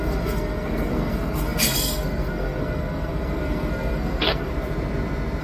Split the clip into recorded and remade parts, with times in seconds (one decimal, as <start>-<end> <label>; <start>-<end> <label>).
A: 0.0-4.5 remade; 4.5-5.4 recorded